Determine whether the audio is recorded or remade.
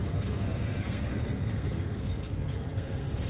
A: remade